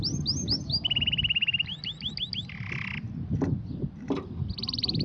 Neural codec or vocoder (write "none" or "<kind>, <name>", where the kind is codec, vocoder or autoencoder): none